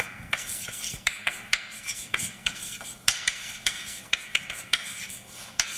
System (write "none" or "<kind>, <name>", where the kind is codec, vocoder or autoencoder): codec, SNAC